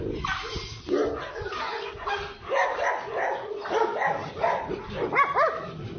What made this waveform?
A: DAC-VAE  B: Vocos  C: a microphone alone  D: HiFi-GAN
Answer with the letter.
C